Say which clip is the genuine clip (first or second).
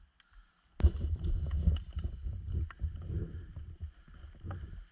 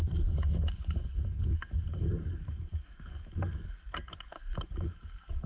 first